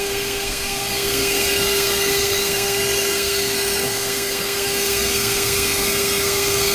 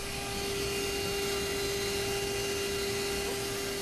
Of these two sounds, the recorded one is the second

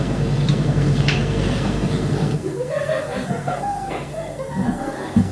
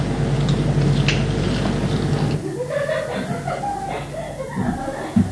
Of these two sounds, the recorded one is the second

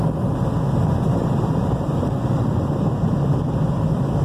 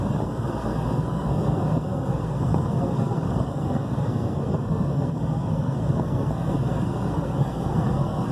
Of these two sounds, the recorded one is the first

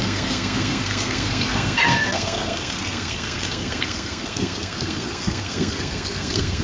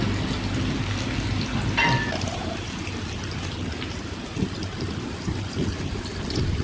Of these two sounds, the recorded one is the second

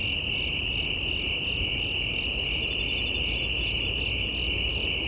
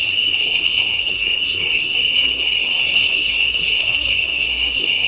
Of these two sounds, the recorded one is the first